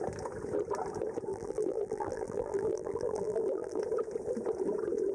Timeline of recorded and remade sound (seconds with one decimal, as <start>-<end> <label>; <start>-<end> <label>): 0.0-1.3 recorded; 1.3-3.8 remade; 3.8-5.1 recorded